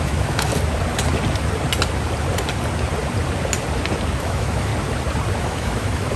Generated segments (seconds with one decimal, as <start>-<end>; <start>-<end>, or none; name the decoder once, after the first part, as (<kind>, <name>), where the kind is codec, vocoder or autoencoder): 0.0-0.5 (autoencoder, DAC-VAE); 4.2-4.7; 5.4-6.2